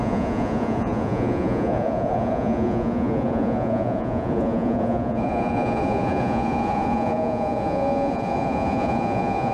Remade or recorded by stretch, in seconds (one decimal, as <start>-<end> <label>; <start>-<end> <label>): 0.0-9.5 remade